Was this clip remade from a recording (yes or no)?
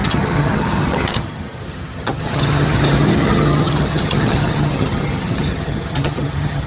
yes